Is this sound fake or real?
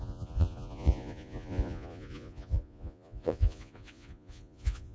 fake